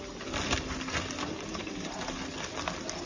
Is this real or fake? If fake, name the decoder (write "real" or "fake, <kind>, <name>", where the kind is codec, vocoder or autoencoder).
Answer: real